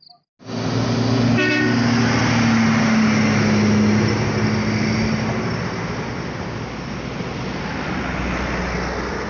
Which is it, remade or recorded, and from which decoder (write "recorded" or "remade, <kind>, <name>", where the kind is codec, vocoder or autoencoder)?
recorded